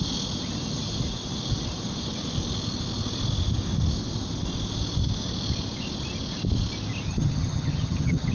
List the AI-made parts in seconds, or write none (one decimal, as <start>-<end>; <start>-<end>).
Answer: 7.1-8.3